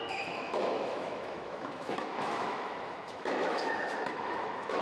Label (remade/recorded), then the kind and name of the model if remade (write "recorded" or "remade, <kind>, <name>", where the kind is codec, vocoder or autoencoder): remade, autoencoder, DAC-VAE